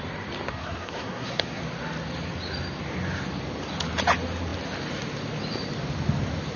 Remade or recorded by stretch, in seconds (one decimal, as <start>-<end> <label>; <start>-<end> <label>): 0.0-0.5 recorded; 0.5-1.6 remade; 1.6-6.6 recorded